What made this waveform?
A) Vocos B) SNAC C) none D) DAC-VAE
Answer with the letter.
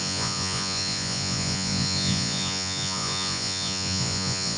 A